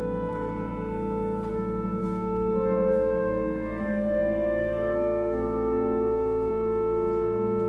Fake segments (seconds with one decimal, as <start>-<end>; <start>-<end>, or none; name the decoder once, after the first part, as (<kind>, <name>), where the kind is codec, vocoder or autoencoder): 2.0-6.5 (codec, SNAC)